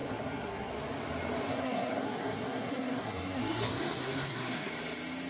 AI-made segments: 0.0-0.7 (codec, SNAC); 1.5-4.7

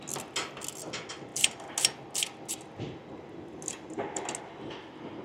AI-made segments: none